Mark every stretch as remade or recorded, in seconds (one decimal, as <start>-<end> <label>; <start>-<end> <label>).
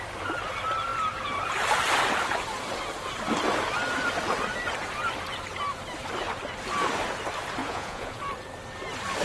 0.0-7.6 recorded; 7.6-8.2 remade; 8.2-9.2 recorded